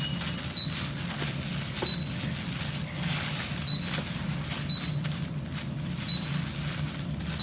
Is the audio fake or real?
real